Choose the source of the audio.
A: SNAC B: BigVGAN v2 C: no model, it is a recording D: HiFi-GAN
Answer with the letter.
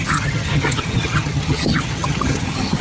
D